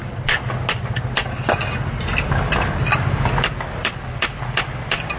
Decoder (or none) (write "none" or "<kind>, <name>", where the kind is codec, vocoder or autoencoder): none